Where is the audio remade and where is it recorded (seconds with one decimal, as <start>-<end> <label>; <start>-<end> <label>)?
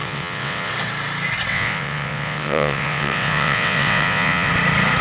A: 0.0-0.7 remade; 0.7-1.5 recorded; 1.5-4.5 remade; 4.5-5.0 recorded